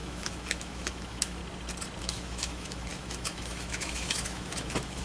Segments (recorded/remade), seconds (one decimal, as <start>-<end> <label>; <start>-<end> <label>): 0.0-1.4 remade; 1.4-2.0 recorded; 2.0-5.0 remade